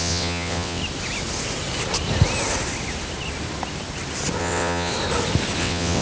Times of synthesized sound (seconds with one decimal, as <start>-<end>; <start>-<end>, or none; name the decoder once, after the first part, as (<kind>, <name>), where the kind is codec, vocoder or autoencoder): 0.0-0.8 (vocoder, WaveNeXt); 4.4-4.9; 5.6-6.0